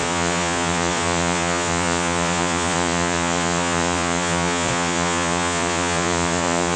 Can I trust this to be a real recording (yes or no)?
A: no